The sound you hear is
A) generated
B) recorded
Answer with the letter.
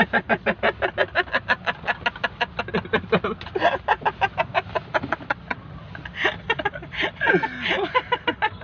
B